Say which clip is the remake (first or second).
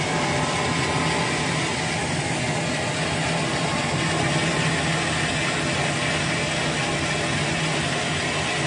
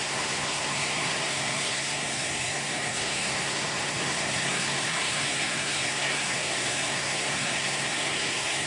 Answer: second